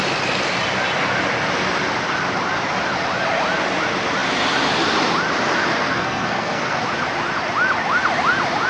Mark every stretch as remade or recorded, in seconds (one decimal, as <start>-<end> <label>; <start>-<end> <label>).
0.0-5.8 recorded; 5.8-6.8 remade; 6.8-8.7 recorded